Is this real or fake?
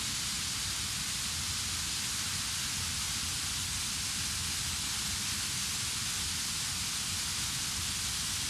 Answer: real